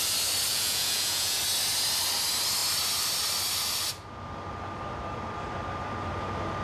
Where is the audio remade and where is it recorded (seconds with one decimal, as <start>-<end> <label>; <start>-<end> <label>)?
0.0-0.5 recorded; 0.5-1.4 remade; 1.4-6.6 recorded